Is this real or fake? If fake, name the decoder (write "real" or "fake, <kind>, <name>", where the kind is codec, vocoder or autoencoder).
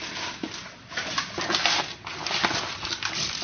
fake, vocoder, BigVGAN v2